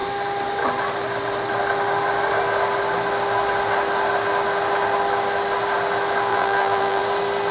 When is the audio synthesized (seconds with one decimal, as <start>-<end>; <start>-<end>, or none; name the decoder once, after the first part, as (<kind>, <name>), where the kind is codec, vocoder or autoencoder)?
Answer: 6.3-7.0 (vocoder, BigVGAN v2)